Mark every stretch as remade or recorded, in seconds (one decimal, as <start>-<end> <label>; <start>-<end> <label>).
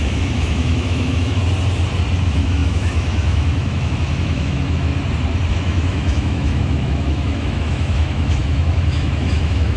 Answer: 0.0-1.4 remade; 1.4-2.2 recorded; 2.2-4.9 remade; 4.9-5.5 recorded; 5.5-9.8 remade